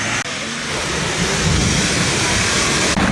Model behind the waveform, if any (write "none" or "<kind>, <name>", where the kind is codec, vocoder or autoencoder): none